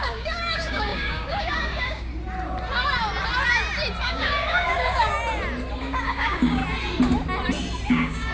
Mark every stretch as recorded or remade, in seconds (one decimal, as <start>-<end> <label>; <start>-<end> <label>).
0.0-2.1 remade; 2.1-4.0 recorded; 4.0-5.1 remade; 5.1-5.8 recorded; 5.8-6.6 remade; 6.6-7.9 recorded; 7.9-8.3 remade